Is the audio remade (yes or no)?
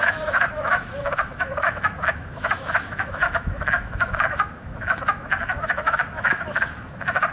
yes